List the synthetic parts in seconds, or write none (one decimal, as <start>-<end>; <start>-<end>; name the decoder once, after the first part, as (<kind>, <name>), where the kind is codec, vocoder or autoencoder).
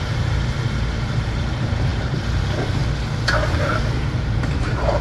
0.0-2.8 (vocoder, BigVGAN v2); 3.5-5.0